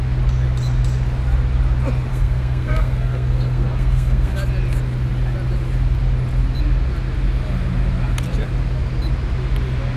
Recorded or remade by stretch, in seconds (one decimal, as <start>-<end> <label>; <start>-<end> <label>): 0.0-2.1 recorded; 2.1-4.3 remade; 4.3-10.0 recorded